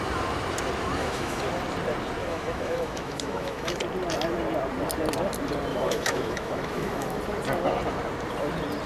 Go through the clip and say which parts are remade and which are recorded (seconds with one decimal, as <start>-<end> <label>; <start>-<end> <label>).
0.0-1.0 recorded; 1.0-1.5 remade; 1.5-2.2 recorded; 2.2-3.8 remade; 3.8-5.7 recorded; 5.7-7.2 remade; 7.2-8.9 recorded

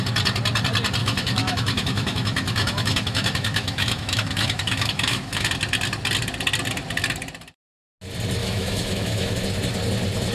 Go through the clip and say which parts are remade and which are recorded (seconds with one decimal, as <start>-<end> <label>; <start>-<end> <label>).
0.0-1.0 recorded; 1.0-5.5 remade; 5.5-8.4 recorded; 8.4-9.4 remade; 9.4-10.3 recorded

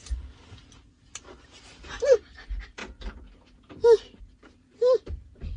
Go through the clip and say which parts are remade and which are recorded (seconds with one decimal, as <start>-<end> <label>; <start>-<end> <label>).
0.0-1.1 recorded; 1.1-2.8 remade; 2.8-4.2 recorded; 4.2-5.6 remade

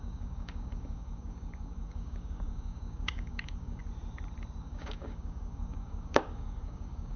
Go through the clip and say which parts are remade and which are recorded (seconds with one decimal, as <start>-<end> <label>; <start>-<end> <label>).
0.0-3.8 remade; 3.8-4.6 recorded; 4.6-7.2 remade

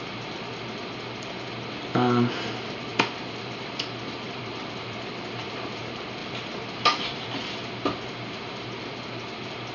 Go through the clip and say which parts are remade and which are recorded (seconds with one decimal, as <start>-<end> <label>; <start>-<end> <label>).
0.0-2.9 recorded; 2.9-5.8 remade; 5.8-6.2 recorded; 6.2-7.8 remade; 7.8-9.7 recorded